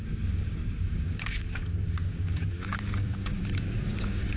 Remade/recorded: remade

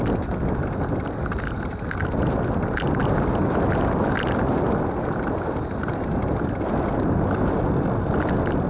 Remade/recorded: recorded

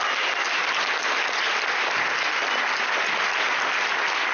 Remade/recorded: recorded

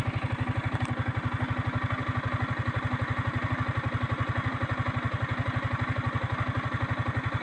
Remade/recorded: recorded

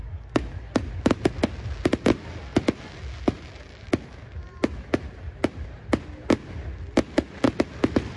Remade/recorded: recorded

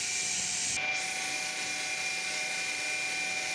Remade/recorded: recorded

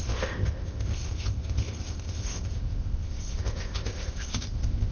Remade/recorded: remade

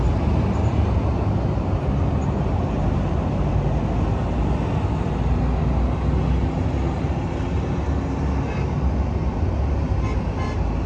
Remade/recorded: recorded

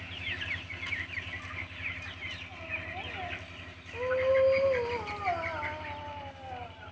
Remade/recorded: recorded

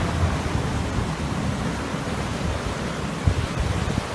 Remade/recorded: remade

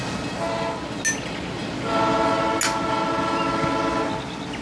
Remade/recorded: recorded